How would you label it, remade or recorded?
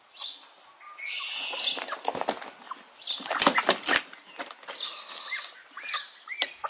recorded